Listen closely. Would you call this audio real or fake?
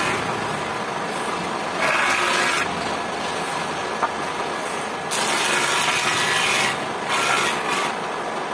real